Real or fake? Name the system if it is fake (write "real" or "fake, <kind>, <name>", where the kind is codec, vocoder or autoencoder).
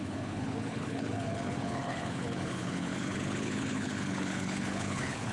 fake, codec, HILCodec